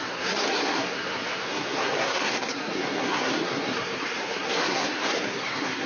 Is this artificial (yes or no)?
yes